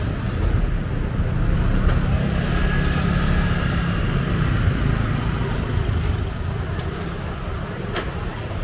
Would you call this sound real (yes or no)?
yes